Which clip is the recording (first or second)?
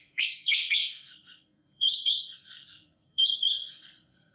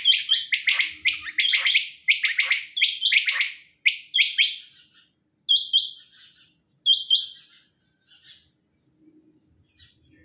second